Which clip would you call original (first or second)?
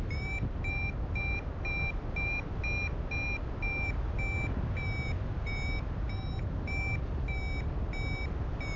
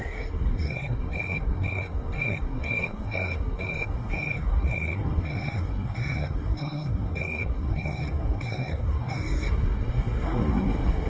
first